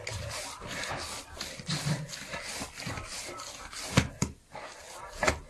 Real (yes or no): yes